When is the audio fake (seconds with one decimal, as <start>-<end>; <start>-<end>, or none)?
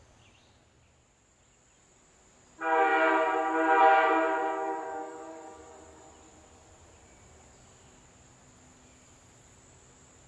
4.4-6.1